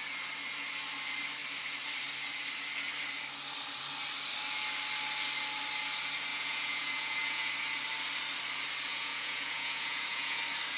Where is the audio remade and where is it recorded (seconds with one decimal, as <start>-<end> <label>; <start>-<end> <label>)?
0.0-6.3 recorded; 6.3-7.5 remade; 7.5-8.9 recorded; 8.9-10.4 remade; 10.4-10.8 recorded